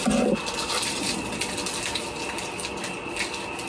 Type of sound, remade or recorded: recorded